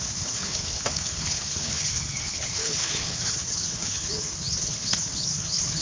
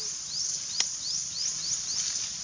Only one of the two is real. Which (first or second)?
second